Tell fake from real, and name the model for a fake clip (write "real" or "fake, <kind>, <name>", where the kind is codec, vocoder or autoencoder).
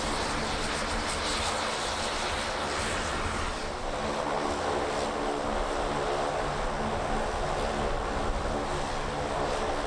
real